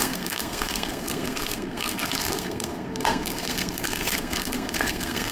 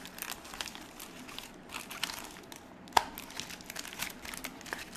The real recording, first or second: second